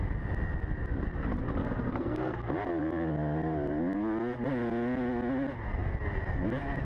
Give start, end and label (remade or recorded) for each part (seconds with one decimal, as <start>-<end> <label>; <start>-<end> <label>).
0.0-1.6 recorded; 1.6-2.5 remade; 2.5-6.8 recorded